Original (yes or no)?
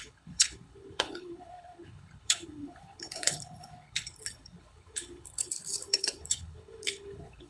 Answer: no